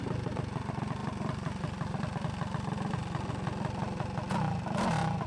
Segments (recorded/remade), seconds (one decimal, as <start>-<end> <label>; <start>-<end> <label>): 0.0-5.3 recorded